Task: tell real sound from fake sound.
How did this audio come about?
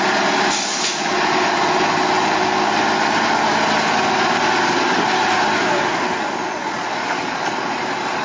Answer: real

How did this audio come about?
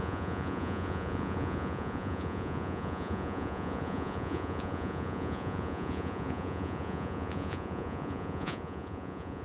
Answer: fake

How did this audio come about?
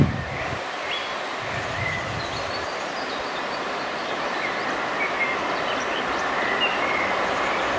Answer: real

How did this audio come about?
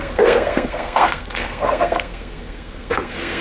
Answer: fake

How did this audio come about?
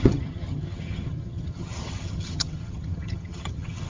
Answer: fake